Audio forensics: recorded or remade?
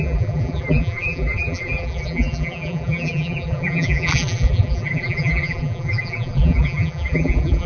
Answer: remade